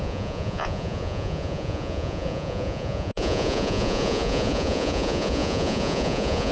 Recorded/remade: remade